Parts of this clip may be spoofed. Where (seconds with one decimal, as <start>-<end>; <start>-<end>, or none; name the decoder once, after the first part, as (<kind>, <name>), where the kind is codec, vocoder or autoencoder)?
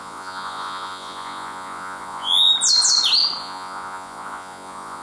0.0-2.5 (vocoder, Vocos); 3.4-5.0